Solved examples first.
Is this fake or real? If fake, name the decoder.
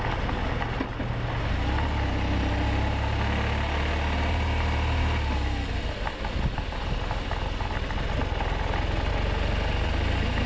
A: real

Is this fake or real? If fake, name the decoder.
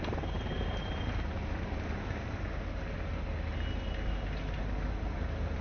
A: real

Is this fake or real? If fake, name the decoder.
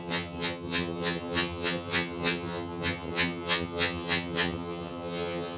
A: fake, vocoder, HiFi-GAN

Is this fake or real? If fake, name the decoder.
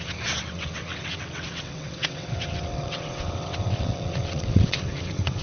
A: fake, vocoder, WaveNeXt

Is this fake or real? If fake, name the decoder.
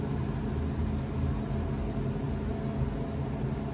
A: real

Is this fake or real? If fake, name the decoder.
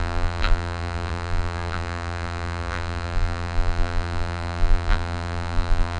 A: fake, vocoder, BigVGAN v2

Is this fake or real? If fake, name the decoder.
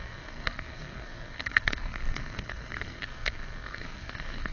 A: fake, codec, SNAC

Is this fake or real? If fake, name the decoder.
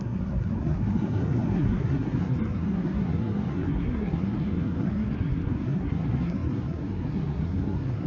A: fake, codec, SNAC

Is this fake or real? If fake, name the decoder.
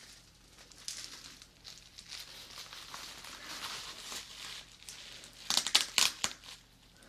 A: real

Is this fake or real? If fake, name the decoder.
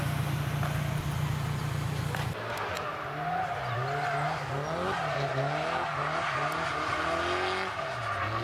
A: real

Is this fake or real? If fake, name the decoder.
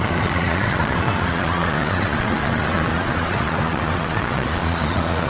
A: fake, vocoder, Vocos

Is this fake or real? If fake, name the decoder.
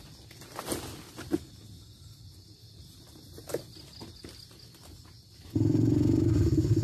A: real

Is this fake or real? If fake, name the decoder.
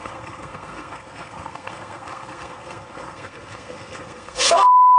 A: fake, codec, SNAC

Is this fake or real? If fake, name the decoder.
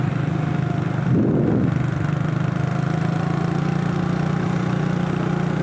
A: real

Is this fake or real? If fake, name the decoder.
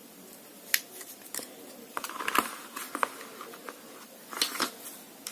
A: real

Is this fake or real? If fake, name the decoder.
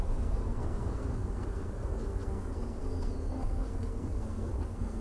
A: fake, codec, SNAC